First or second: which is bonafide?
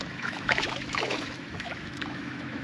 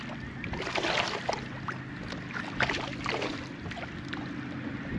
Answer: second